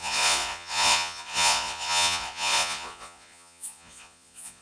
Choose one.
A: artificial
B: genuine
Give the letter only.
A